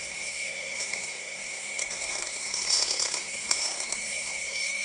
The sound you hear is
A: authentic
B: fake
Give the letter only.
B